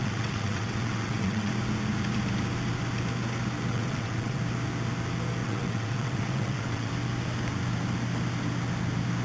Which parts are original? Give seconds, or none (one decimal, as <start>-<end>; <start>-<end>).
1.5-3.7; 4.4-5.4; 6.9-9.2

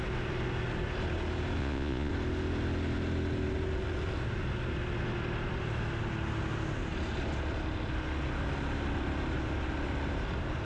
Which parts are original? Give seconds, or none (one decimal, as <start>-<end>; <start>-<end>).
0.0-1.6; 2.1-10.6

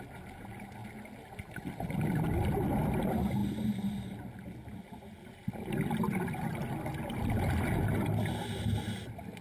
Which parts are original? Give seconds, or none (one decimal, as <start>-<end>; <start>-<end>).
0.0-9.4

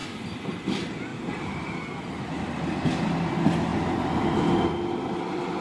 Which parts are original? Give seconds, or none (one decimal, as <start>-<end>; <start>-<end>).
0.0-1.1; 2.3-3.7; 4.4-5.6

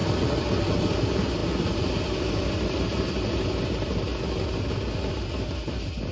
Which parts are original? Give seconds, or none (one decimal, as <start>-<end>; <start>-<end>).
0.0-6.1

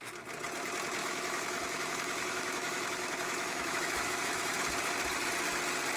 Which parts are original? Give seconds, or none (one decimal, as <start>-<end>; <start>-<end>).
0.0-1.0; 4.6-6.0

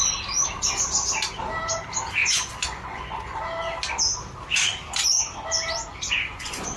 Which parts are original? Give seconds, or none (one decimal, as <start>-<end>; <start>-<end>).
0.0-2.2; 3.4-5.9